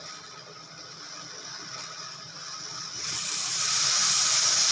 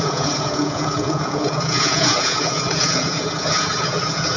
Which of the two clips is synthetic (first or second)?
second